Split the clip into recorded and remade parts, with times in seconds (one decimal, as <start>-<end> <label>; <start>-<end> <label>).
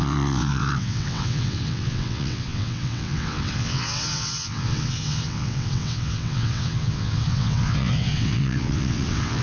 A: 0.0-9.4 remade